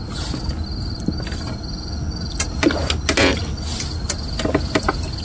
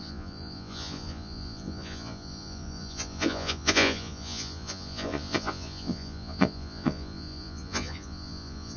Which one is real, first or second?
first